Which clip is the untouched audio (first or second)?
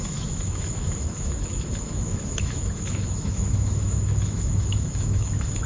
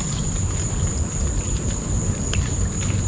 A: second